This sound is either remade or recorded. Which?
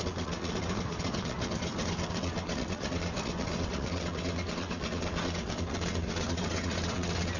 remade